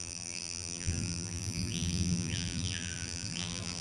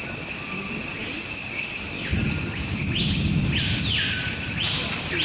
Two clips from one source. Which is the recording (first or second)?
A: second